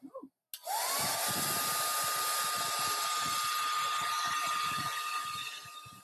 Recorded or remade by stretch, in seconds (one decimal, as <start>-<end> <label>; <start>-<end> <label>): 0.0-6.0 recorded